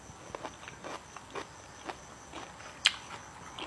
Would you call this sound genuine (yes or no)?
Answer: yes